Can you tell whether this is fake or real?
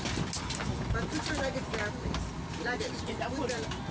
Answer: real